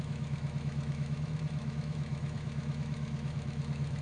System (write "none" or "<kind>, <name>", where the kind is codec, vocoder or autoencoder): autoencoder, DAC-VAE